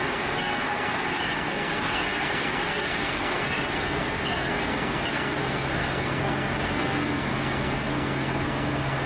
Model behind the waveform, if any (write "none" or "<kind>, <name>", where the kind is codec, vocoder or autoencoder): codec, SNAC